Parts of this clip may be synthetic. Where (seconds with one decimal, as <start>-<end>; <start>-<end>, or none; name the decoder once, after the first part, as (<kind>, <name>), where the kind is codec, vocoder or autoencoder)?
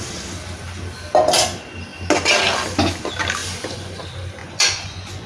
3.4-4.0 (vocoder, Vocos); 4.4-5.3